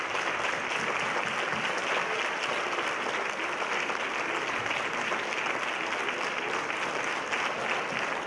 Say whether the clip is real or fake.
real